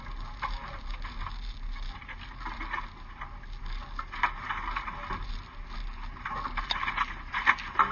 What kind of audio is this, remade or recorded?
recorded